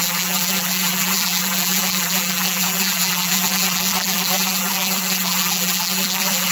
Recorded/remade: remade